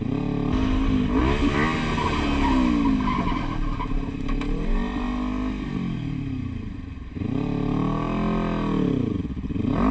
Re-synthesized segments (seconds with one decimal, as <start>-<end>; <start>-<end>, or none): none